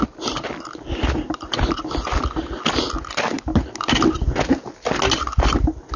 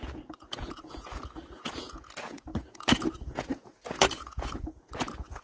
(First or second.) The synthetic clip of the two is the second